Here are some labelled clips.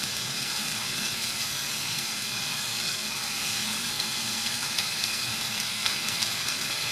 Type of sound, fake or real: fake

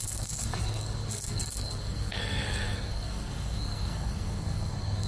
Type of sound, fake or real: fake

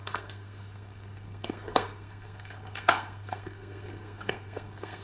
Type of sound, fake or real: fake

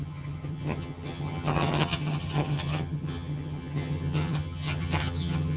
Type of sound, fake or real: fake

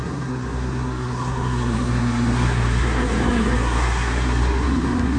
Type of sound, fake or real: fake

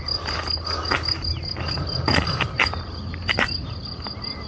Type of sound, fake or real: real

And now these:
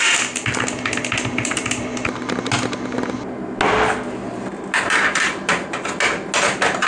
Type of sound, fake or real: real